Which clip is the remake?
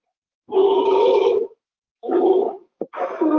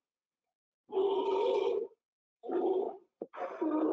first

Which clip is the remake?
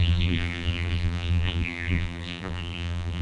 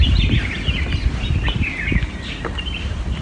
first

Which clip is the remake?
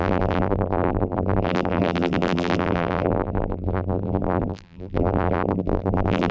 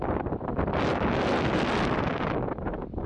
first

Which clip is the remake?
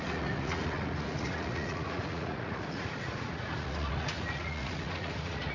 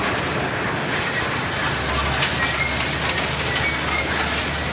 first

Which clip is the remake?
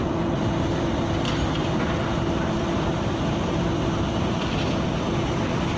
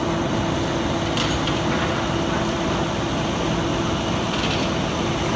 first